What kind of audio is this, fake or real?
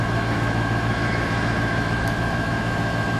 fake